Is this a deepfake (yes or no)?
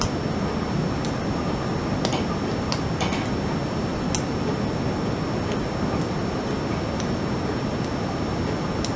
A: no